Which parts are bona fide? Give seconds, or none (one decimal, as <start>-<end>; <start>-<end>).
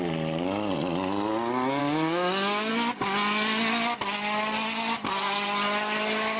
0.0-1.8; 2.7-6.4